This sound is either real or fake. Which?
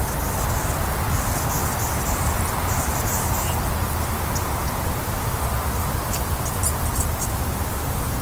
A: real